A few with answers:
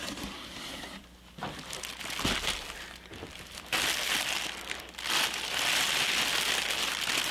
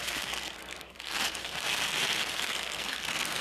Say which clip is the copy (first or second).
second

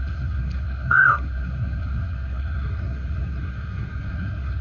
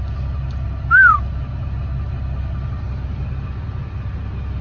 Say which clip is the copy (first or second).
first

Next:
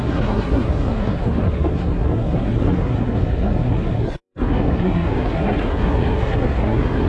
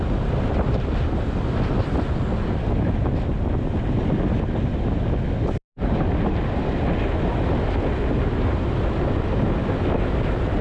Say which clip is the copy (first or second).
first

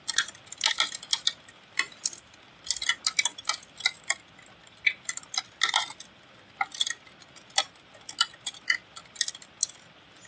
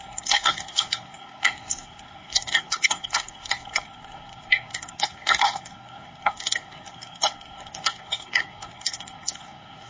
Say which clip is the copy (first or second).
second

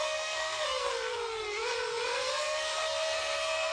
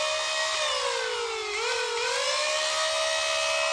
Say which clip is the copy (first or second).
first